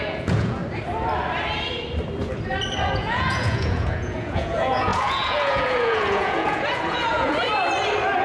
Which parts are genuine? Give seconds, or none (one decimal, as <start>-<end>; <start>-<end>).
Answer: 0.6-2.9; 7.5-8.2